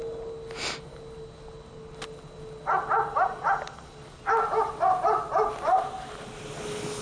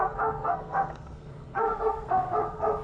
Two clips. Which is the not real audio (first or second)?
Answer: second